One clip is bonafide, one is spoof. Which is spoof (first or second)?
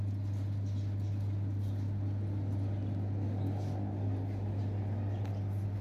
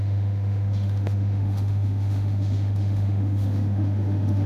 second